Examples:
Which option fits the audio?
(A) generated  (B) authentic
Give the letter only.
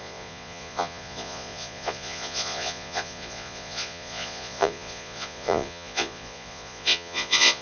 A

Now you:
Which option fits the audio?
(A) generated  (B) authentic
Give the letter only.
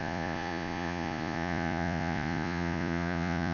A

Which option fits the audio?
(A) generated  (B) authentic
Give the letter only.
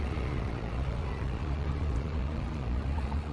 A